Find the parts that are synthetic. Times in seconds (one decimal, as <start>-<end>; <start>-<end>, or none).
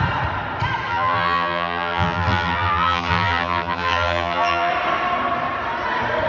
0.9-4.7